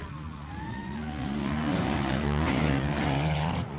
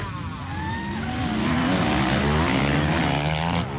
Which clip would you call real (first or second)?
second